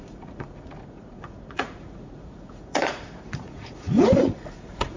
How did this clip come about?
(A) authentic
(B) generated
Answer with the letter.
B